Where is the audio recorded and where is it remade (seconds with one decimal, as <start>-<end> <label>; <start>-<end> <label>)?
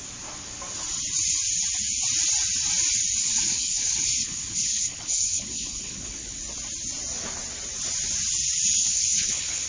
0.0-3.2 recorded; 3.2-6.4 remade; 6.4-8.8 recorded; 8.8-9.7 remade